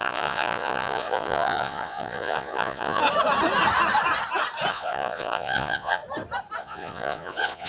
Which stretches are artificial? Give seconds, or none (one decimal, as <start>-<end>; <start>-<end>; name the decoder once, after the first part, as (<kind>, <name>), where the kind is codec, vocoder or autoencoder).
0.0-3.0 (vocoder, Vocos); 4.7-6.0; 6.6-7.7